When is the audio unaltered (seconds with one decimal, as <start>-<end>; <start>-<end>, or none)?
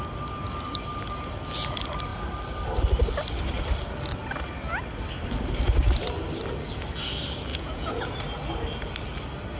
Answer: 0.0-7.5; 8.1-9.6